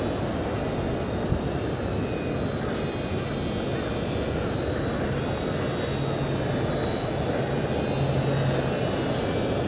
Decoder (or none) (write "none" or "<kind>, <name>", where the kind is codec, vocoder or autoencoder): none